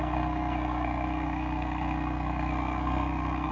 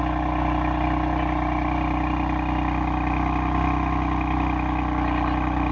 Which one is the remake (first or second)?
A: first